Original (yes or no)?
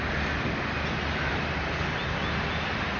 yes